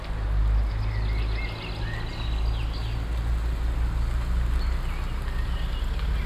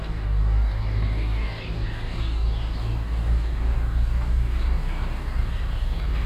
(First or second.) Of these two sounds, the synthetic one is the second